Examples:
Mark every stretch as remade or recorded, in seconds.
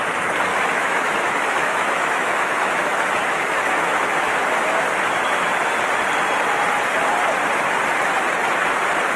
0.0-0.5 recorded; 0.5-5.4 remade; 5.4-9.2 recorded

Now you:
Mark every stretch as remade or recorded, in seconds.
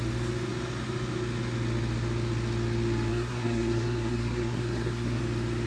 0.0-3.1 recorded; 3.1-5.2 remade; 5.2-5.7 recorded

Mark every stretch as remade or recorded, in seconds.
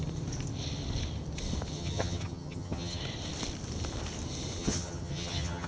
0.0-1.7 recorded; 1.7-3.0 remade; 3.0-4.6 recorded; 4.6-5.7 remade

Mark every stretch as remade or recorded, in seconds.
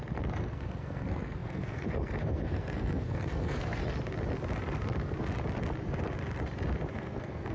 0.0-3.8 remade; 3.8-6.9 recorded; 6.9-7.5 remade